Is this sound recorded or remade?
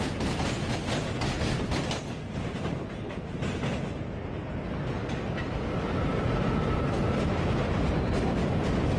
recorded